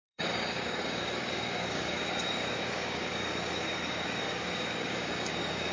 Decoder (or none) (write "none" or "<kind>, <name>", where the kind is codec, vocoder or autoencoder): codec, DAC